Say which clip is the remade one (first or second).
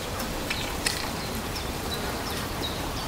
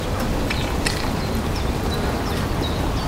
first